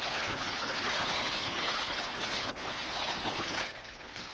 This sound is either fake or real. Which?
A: fake